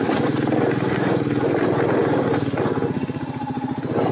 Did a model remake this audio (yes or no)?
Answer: no